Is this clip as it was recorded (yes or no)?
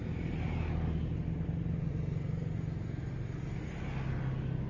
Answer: yes